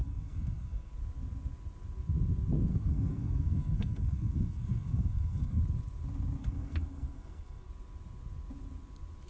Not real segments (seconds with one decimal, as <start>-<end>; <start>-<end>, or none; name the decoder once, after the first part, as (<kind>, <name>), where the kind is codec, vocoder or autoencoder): 0.0-0.9 (codec, SNAC); 2.7-5.6; 6.4-7.7